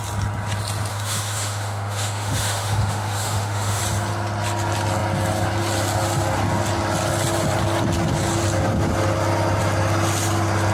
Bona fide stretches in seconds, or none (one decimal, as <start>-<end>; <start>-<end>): 0.0-0.9; 3.8-10.7